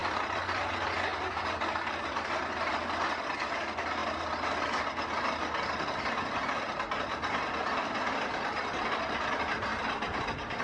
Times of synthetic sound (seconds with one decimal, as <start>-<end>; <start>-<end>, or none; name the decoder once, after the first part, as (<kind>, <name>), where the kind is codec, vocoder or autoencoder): 0.0-1.1 (vocoder, BigVGAN v2); 1.9-4.0; 8.1-10.6